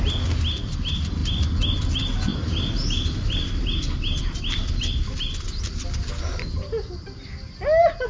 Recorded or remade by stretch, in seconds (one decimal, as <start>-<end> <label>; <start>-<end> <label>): 0.0-2.3 recorded; 2.3-6.2 remade; 6.2-8.1 recorded